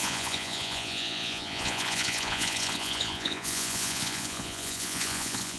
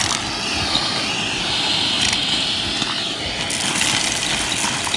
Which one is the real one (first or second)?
second